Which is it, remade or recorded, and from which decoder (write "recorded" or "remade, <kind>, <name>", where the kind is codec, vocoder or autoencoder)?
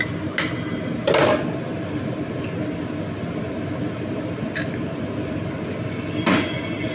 recorded